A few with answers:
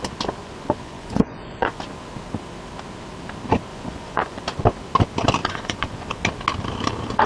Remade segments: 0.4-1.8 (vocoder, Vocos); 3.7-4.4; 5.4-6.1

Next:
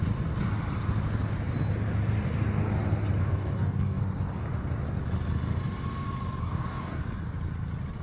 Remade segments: 3.2-4.0 (codec, DAC); 6.4-7.0

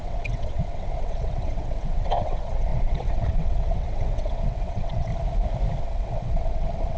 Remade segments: 0.0-5.1 (vocoder, WaveNeXt); 5.8-7.0

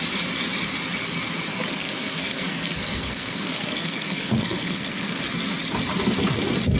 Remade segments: 1.5-5.2 (codec, SNAC)